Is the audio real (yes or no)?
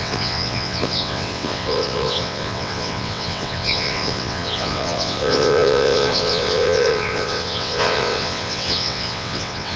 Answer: no